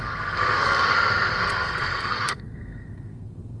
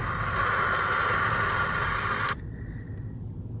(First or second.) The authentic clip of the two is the second